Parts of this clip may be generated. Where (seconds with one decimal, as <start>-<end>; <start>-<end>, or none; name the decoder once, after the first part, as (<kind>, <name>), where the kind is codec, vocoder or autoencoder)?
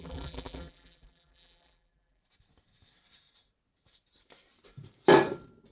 0.0-2.2 (vocoder, BigVGAN v2)